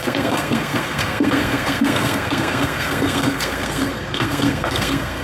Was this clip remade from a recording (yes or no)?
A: yes